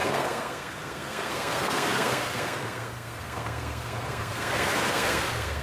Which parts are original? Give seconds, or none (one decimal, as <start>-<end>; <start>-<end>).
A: none